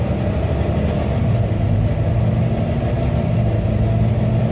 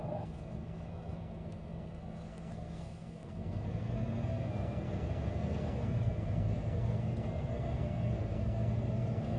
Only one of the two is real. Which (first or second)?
first